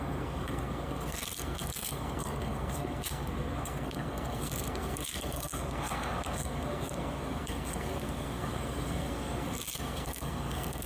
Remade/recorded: remade